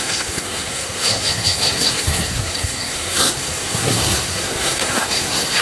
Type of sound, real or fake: fake